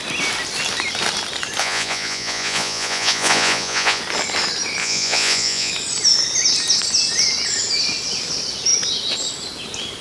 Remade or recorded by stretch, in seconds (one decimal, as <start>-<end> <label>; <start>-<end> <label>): 0.0-1.6 recorded; 1.6-4.0 remade; 4.0-4.8 recorded; 4.8-5.7 remade; 5.7-10.0 recorded